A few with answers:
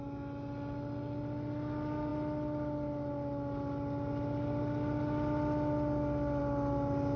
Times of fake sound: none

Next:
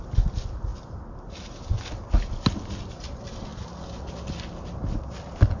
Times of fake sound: none